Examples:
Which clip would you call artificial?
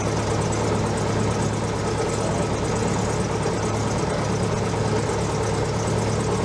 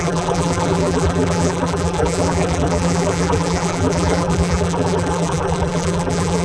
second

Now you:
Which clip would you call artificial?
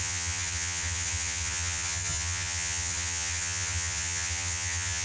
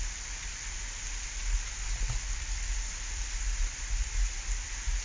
first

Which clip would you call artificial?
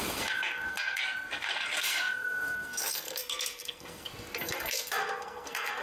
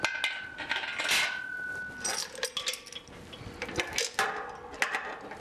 first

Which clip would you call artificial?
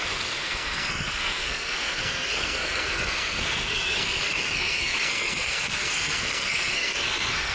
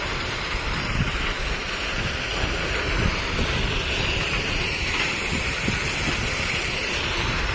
first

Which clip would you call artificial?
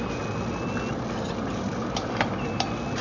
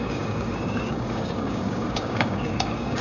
second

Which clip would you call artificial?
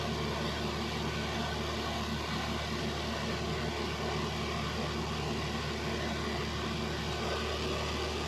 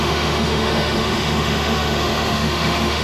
second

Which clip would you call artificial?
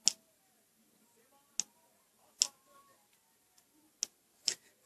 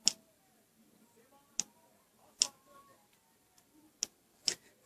second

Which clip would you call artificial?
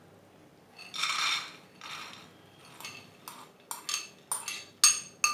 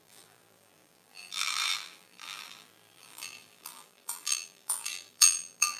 second